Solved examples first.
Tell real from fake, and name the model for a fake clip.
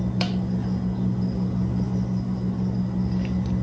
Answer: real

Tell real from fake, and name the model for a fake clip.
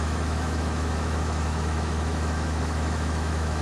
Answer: fake, autoencoder, DAC-VAE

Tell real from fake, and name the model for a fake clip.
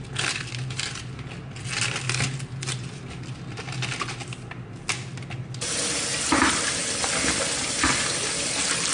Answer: real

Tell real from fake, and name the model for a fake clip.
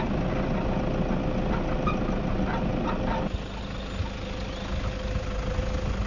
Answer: real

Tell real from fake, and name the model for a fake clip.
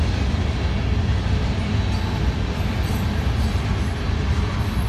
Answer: real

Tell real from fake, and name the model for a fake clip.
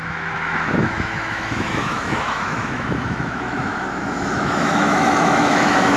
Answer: fake, autoencoder, DAC-VAE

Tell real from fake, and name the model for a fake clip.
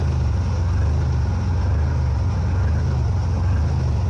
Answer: real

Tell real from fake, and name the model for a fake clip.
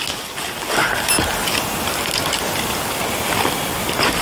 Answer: real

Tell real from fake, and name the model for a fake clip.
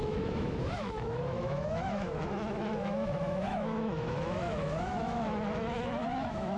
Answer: fake, autoencoder, DAC-VAE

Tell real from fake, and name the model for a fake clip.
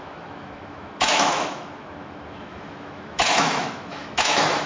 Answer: fake, autoencoder, DAC-VAE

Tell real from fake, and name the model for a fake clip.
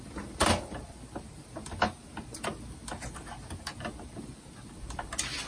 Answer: real